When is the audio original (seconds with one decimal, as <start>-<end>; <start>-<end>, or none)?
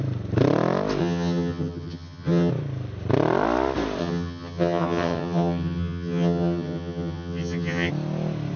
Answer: 0.0-1.0; 2.5-4.0; 7.9-8.6